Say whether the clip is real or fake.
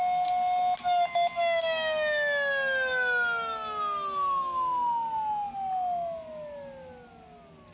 real